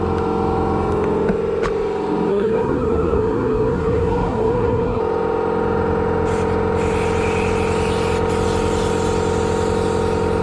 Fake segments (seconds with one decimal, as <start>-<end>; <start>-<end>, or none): 2.3-5.0